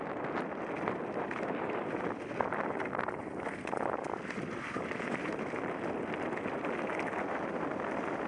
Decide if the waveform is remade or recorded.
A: recorded